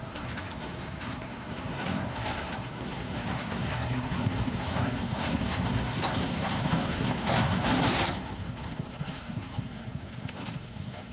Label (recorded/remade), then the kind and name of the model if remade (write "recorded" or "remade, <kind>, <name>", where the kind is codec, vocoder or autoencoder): remade, codec, SNAC